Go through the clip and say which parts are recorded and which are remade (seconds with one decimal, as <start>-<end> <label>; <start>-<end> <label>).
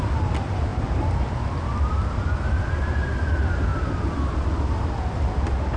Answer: 0.0-5.8 recorded